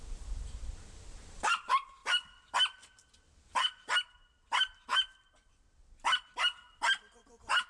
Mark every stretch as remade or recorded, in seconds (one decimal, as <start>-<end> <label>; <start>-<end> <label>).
0.0-2.0 remade; 2.0-4.1 recorded; 4.1-4.9 remade; 4.9-6.4 recorded; 6.4-7.7 remade